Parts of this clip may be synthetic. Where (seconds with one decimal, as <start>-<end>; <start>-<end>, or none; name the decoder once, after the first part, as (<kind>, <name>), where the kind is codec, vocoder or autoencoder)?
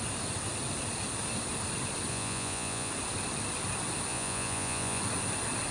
2.1-2.9 (vocoder, Vocos); 4.1-5.0